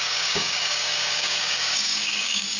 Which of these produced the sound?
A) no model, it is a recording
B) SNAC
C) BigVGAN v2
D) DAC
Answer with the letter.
D